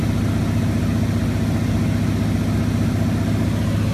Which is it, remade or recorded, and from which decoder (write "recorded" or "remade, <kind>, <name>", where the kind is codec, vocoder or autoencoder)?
recorded